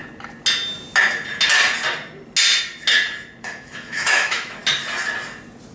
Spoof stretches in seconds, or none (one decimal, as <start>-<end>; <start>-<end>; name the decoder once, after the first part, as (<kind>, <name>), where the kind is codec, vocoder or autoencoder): 3.4-4.6 (autoencoder, DAC-VAE)